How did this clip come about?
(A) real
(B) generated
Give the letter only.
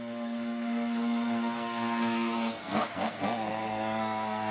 B